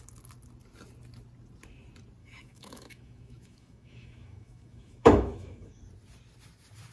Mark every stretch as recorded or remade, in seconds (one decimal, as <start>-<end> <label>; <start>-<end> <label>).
0.0-2.2 recorded; 2.2-5.8 remade; 5.8-6.9 recorded

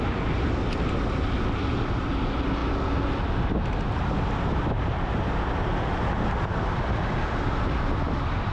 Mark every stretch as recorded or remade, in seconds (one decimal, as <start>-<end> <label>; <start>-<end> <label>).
0.0-8.5 recorded

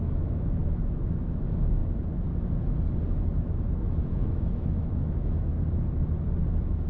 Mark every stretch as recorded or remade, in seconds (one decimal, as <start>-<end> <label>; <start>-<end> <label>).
0.0-1.8 remade; 1.8-3.4 recorded; 3.4-5.5 remade; 5.5-6.5 recorded; 6.5-6.9 remade

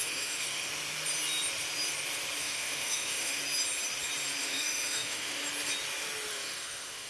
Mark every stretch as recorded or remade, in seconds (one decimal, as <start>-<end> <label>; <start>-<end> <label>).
0.0-0.7 remade; 0.7-2.4 recorded; 2.4-3.4 remade; 3.4-4.4 recorded; 4.4-5.4 remade; 5.4-6.3 recorded; 6.3-7.1 remade